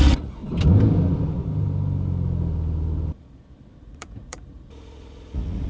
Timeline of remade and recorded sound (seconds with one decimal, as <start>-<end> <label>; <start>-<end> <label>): 0.0-0.4 remade; 0.4-3.8 recorded; 3.8-5.7 remade